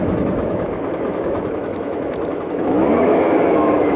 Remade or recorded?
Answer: remade